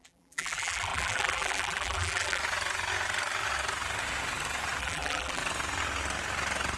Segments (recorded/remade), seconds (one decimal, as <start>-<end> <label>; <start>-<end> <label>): 0.0-2.4 remade; 2.4-4.8 recorded; 4.8-5.4 remade; 5.4-6.8 recorded